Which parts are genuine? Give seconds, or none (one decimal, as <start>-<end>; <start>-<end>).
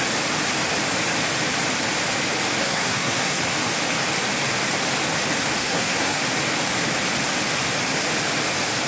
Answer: 0.0-2.6; 3.4-5.6; 6.2-8.9